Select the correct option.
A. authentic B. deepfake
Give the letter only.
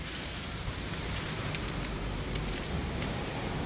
B